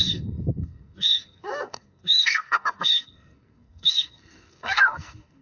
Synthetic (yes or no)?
yes